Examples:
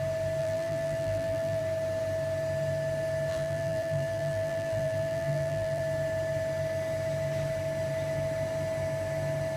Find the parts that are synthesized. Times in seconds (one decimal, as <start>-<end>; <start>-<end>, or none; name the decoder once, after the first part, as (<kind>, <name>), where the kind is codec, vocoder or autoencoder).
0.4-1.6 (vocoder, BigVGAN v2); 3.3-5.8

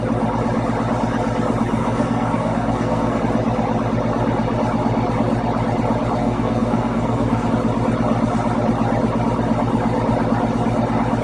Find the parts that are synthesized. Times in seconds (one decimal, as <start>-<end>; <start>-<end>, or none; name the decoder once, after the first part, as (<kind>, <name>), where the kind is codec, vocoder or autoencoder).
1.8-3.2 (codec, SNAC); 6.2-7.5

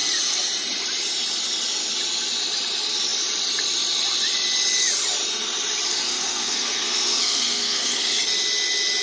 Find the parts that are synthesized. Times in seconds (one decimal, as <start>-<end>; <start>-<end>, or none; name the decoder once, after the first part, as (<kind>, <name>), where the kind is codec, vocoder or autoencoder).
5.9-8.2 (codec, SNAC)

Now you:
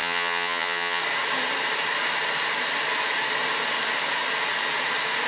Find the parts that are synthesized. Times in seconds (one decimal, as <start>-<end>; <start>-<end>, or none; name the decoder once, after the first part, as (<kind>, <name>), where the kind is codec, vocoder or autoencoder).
0.0-1.0 (vocoder, HiFi-GAN)

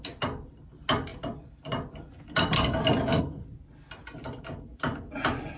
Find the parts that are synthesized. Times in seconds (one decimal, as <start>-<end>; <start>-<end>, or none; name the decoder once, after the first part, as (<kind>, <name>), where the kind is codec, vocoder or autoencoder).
none